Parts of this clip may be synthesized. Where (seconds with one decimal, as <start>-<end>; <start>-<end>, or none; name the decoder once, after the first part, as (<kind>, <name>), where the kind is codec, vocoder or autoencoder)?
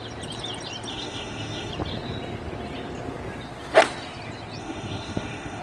0.9-1.7 (autoencoder, DAC-VAE); 4.6-5.6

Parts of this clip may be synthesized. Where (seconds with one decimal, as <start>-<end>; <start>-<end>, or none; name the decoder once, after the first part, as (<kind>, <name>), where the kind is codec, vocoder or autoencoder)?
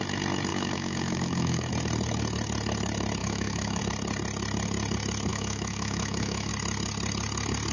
0.5-1.7 (autoencoder, DAC-VAE); 3.2-3.8; 5.3-6.5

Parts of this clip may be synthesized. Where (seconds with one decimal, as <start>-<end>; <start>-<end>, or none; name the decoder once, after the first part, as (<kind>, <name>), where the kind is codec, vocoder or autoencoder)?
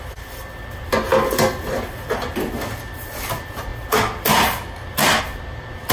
none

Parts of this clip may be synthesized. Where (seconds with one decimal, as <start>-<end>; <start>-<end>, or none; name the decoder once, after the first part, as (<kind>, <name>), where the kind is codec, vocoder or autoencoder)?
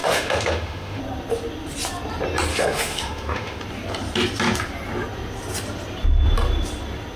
0.0-1.0 (autoencoder, DAC-VAE); 2.5-3.6